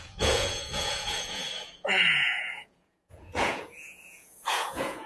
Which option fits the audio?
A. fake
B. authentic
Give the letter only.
A